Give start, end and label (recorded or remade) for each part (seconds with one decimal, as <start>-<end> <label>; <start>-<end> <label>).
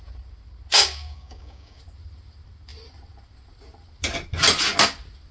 0.0-0.7 recorded; 0.7-1.8 remade; 1.8-5.3 recorded